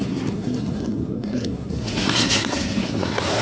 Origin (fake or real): fake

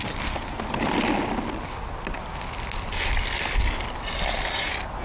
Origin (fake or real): real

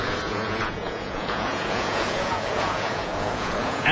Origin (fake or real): fake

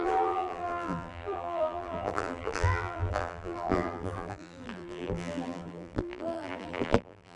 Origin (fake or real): fake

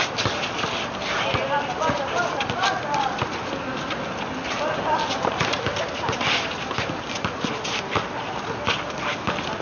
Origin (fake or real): real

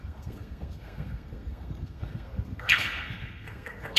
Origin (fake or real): fake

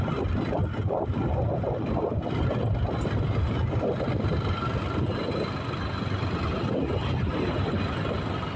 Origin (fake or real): real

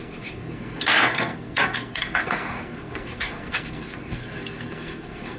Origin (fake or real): fake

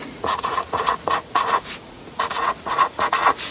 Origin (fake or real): fake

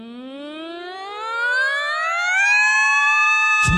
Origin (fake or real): real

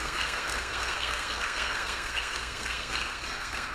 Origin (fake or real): fake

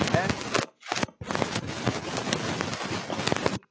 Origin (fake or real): real